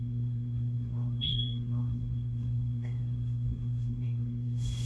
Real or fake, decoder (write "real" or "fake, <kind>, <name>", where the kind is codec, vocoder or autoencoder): fake, codec, SNAC